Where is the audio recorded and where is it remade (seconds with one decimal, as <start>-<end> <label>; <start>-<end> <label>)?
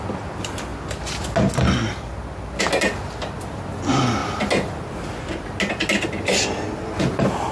0.0-7.5 recorded